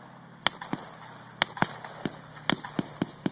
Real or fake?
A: real